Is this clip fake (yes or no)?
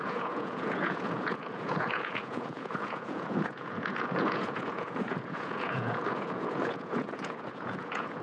yes